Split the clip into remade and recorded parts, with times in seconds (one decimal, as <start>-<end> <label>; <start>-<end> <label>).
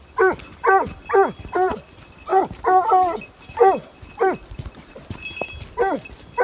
0.0-6.4 recorded